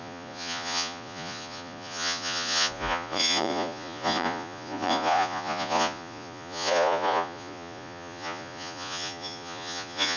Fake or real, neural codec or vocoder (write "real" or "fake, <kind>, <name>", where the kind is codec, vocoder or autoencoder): fake, vocoder, Vocos